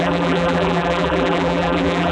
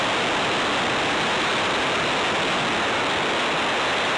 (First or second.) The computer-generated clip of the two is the first